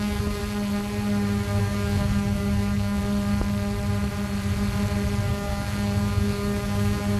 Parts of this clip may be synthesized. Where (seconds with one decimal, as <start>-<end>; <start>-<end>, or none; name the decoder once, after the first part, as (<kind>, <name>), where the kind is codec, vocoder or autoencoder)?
0.0-0.4 (codec, DAC); 1.6-3.0; 5.3-7.2